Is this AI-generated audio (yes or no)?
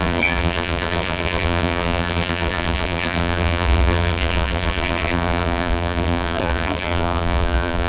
yes